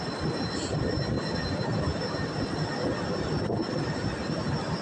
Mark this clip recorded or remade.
recorded